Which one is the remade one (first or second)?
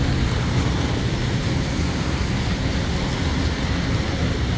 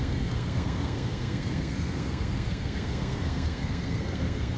second